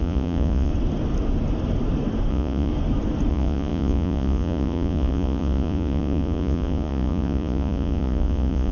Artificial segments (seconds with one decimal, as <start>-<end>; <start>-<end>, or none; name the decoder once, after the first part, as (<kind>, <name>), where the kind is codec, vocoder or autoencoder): 0.0-0.7 (vocoder, Vocos); 2.3-2.7; 3.3-8.7